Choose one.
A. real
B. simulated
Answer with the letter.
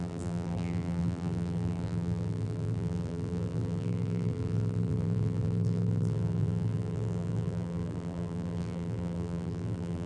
B